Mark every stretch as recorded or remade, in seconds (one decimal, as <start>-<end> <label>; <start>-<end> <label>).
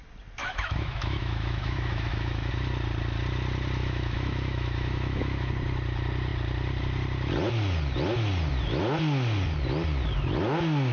0.0-0.4 recorded; 0.4-2.5 remade; 2.5-3.8 recorded; 3.8-5.5 remade; 5.5-10.9 recorded